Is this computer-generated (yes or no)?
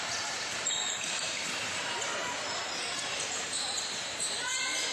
yes